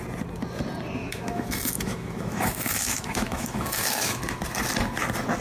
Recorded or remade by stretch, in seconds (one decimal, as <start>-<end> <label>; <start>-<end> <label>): 0.0-1.0 recorded; 1.0-4.2 remade; 4.2-5.4 recorded